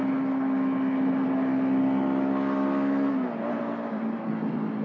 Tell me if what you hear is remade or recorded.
recorded